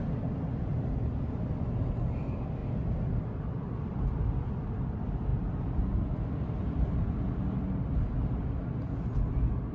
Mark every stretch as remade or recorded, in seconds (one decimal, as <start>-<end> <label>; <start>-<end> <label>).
0.0-9.7 recorded